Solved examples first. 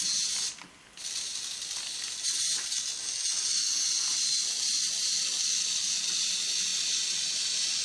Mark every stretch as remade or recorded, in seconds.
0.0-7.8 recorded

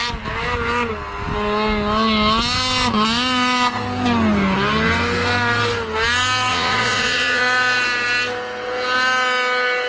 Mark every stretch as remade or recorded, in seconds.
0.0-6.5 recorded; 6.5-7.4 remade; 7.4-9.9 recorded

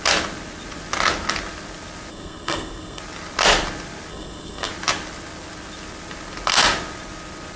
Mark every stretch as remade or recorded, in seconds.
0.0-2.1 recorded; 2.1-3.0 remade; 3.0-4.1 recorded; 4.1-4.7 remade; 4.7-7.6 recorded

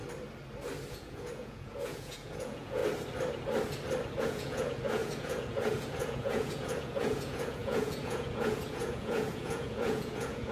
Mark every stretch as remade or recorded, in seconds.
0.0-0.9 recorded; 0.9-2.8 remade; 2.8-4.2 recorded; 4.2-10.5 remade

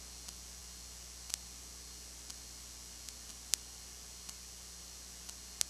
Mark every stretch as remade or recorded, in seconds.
0.0-5.7 recorded

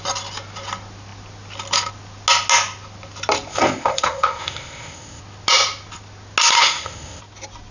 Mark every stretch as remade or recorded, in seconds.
0.0-3.5 recorded; 3.5-5.2 remade; 5.2-6.6 recorded; 6.6-7.2 remade; 7.2-7.7 recorded